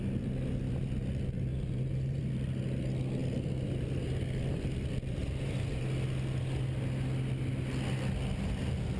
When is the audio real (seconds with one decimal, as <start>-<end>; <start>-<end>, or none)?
0.0-1.5; 2.2-5.2; 5.8-9.0